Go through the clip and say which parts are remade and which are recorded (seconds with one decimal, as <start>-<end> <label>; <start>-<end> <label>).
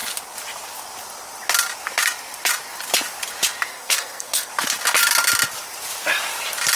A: 0.0-3.7 recorded; 3.7-4.5 remade; 4.5-6.8 recorded